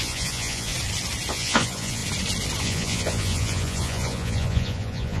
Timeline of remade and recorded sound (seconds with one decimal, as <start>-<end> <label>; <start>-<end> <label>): 0.0-0.7 remade; 0.7-1.3 recorded; 1.3-2.0 remade; 2.0-2.6 recorded; 2.6-5.2 remade